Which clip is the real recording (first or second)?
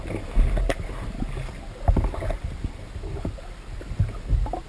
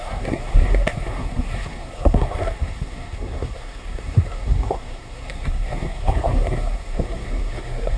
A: first